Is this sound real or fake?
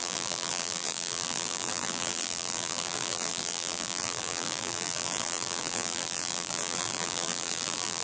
fake